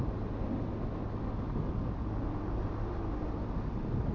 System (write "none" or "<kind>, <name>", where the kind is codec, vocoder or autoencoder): none